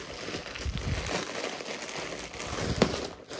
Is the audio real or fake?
real